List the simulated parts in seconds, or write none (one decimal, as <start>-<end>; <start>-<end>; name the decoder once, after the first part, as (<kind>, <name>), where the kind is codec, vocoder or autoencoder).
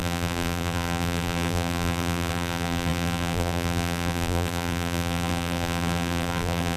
0.0-6.8 (vocoder, BigVGAN v2)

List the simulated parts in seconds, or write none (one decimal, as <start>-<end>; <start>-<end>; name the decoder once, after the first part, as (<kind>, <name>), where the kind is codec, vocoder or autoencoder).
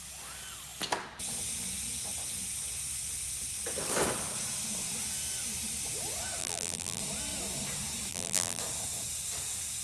6.4-7.0 (vocoder, BigVGAN v2); 8.1-8.6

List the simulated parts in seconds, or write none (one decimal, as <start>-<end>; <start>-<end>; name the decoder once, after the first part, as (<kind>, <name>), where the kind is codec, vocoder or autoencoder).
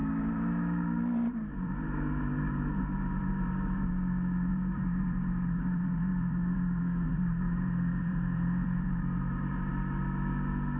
0.0-3.9 (vocoder, BigVGAN v2); 4.5-9.7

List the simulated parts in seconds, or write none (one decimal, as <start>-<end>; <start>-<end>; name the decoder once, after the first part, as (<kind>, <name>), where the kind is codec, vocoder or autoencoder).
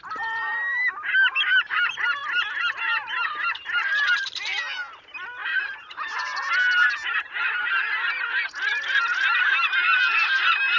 0.0-10.8 (vocoder, BigVGAN v2)